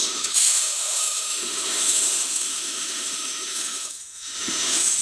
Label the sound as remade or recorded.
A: remade